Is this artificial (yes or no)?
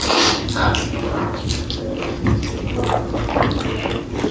no